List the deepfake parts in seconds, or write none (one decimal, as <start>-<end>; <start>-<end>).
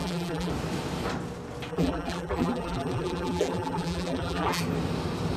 0.0-0.5; 1.7-4.6